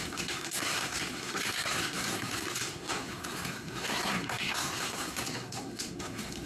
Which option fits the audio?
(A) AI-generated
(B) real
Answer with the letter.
A